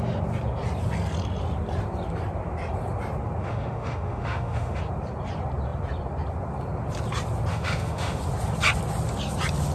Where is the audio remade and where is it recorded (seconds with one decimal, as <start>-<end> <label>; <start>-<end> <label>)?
0.0-3.4 recorded; 3.4-4.8 remade; 4.8-7.5 recorded; 7.5-8.2 remade; 8.2-9.7 recorded

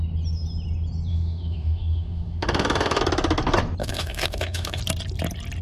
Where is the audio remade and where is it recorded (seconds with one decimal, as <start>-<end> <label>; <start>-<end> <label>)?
0.0-1.1 recorded; 1.1-3.0 remade; 3.0-3.8 recorded; 3.8-4.8 remade; 4.8-5.6 recorded

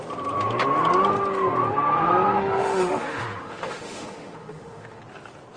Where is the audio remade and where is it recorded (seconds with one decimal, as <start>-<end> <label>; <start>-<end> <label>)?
0.0-2.4 recorded; 2.4-5.0 remade; 5.0-5.6 recorded

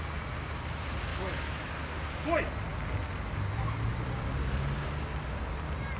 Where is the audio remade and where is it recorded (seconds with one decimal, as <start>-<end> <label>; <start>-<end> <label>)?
0.0-1.1 recorded; 1.1-1.7 remade; 1.7-6.0 recorded

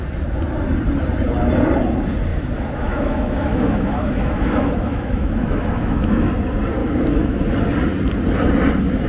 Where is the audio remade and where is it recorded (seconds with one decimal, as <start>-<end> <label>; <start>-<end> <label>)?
0.0-2.3 recorded; 2.3-6.3 remade; 6.3-6.8 recorded; 6.8-7.4 remade; 7.4-9.1 recorded

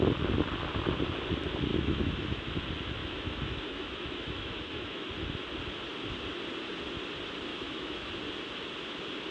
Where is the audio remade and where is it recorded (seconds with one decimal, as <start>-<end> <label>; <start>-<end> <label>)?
0.0-1.7 recorded; 1.7-2.6 remade; 2.6-3.0 recorded; 3.0-5.1 remade; 5.1-7.5 recorded; 7.5-8.1 remade; 8.1-9.3 recorded

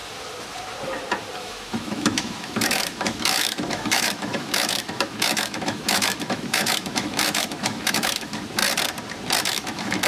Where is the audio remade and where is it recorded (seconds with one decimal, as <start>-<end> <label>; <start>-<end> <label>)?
0.0-1.4 recorded; 1.4-8.6 remade; 8.6-9.4 recorded; 9.4-10.1 remade

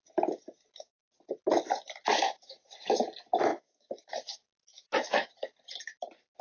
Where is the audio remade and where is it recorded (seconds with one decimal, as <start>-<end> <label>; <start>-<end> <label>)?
0.0-3.5 recorded; 3.5-4.2 remade; 4.2-4.7 recorded; 4.7-5.3 remade; 5.3-6.4 recorded